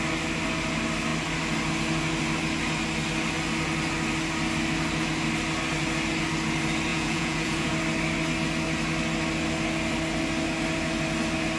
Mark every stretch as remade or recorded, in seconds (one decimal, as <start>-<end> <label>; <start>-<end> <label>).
0.0-6.9 recorded; 6.9-7.7 remade; 7.7-11.6 recorded